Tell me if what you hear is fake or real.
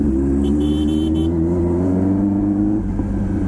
real